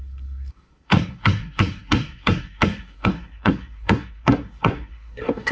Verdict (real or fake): fake